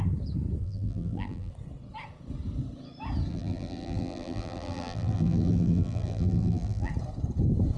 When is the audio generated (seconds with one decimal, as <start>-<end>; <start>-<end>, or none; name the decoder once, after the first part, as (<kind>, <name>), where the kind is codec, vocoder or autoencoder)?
0.6-1.5 (vocoder, BigVGAN v2); 3.3-6.9